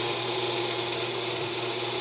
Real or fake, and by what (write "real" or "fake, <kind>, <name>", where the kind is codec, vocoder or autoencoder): real